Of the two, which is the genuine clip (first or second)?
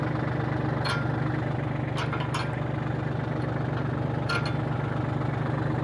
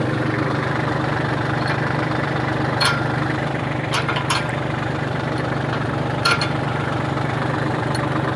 first